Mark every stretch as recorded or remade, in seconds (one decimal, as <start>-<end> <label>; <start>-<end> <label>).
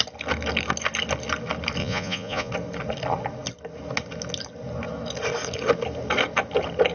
0.0-1.8 recorded; 1.8-2.5 remade; 2.5-6.9 recorded